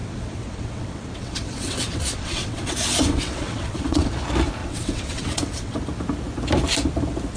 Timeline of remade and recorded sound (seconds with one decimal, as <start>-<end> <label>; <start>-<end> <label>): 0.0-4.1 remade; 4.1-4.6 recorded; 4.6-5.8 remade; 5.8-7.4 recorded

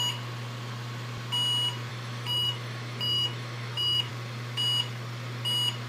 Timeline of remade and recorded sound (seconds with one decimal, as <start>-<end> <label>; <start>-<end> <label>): 0.0-1.9 recorded; 1.9-4.1 remade; 4.1-5.9 recorded

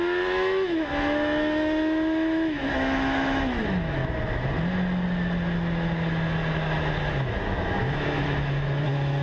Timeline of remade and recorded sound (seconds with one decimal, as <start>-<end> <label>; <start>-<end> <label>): 0.0-4.0 remade; 4.0-7.3 recorded; 7.3-9.2 remade